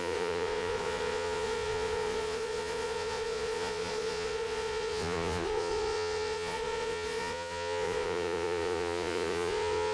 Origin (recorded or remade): remade